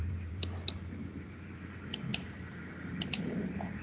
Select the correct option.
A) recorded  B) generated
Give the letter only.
B